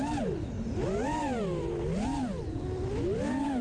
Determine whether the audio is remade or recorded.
recorded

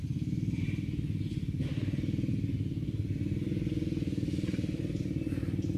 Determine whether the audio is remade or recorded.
recorded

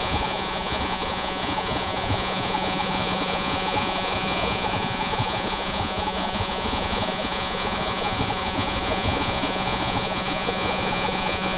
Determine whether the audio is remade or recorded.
remade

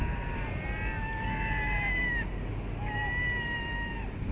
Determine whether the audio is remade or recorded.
recorded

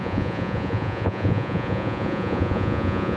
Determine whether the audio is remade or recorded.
remade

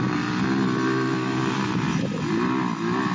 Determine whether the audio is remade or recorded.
recorded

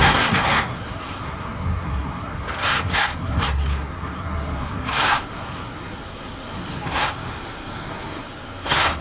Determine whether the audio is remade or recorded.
remade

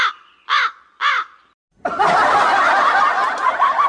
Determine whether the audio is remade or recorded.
recorded